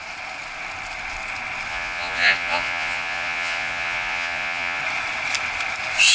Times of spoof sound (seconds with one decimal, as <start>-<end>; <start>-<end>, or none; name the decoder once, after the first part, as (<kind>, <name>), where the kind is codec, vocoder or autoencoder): 1.7-4.8 (vocoder, Vocos)